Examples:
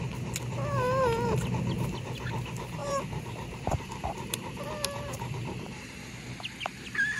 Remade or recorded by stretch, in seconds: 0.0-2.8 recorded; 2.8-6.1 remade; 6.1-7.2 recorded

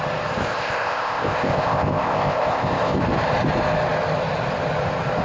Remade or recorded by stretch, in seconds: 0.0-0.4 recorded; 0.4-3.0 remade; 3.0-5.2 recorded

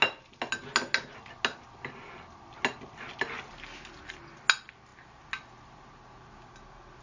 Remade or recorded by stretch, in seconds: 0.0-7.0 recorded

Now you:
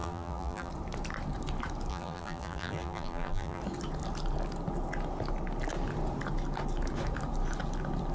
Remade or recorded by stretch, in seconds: 0.0-0.7 remade; 0.7-1.9 recorded; 1.9-3.6 remade; 3.6-8.1 recorded

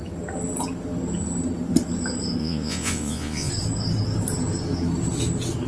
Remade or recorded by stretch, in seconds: 0.0-2.4 recorded; 2.4-3.5 remade; 3.5-5.7 recorded

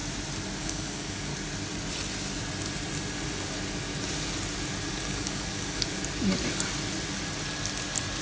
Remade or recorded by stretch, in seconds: 0.0-0.6 recorded; 0.6-1.3 remade; 1.3-4.9 recorded; 4.9-6.0 remade; 6.0-8.2 recorded

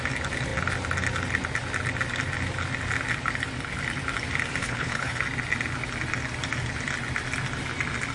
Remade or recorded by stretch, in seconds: 0.0-4.6 recorded; 4.6-5.2 remade; 5.2-8.1 recorded